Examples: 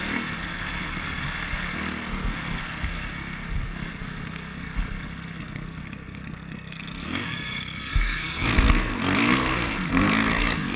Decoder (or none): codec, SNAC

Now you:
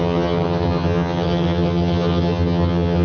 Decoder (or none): vocoder, HiFi-GAN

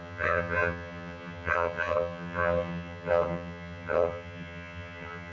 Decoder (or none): vocoder, HiFi-GAN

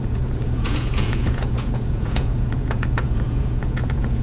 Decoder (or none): vocoder, Vocos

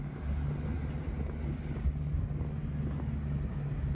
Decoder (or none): none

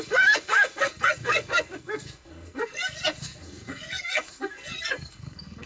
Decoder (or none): codec, SNAC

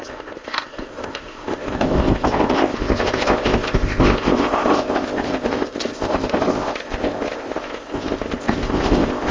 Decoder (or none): codec, ZipCodec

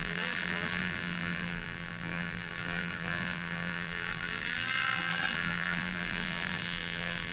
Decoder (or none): vocoder, BigVGAN v2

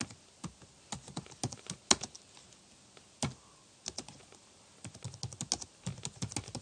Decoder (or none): none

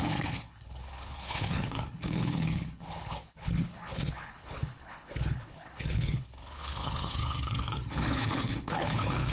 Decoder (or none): codec, HILCodec